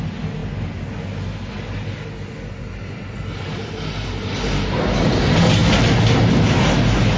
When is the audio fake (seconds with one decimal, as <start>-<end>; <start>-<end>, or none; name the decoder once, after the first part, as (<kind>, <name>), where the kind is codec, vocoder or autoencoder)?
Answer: none